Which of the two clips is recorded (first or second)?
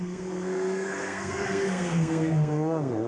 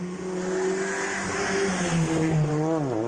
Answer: second